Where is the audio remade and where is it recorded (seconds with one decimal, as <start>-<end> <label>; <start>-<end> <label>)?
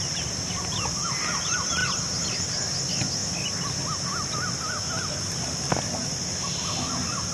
0.0-7.3 recorded